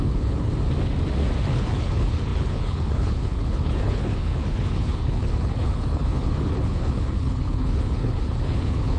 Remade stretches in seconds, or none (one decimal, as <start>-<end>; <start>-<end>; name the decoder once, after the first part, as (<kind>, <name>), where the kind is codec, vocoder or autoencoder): 0.0-0.5 (codec, HILCodec); 1.4-9.0